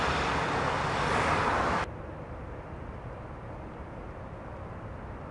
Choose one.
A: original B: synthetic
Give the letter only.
A